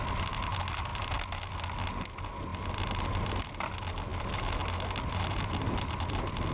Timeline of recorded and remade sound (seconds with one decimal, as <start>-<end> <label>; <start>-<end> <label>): 0.0-6.5 recorded